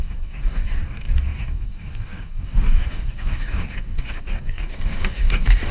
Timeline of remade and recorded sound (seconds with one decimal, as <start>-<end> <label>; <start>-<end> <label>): 0.0-5.7 remade